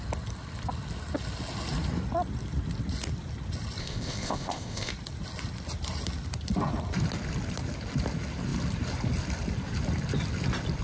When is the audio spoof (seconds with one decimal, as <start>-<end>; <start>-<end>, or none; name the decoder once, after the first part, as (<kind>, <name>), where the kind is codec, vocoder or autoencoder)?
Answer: 3.8-4.9 (codec, ZipCodec)